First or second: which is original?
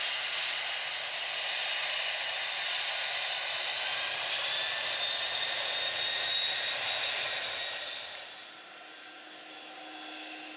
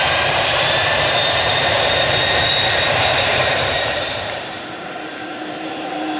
first